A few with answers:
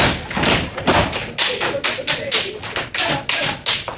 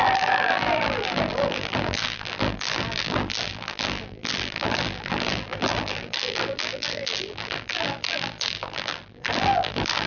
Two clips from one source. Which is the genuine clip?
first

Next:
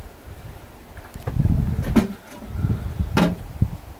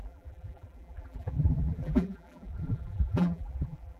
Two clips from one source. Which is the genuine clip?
first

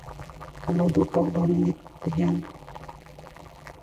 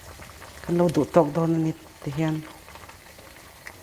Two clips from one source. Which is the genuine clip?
second